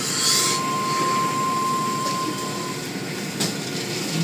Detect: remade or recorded recorded